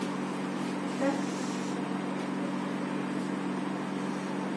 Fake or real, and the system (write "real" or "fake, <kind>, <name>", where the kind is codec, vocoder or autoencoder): real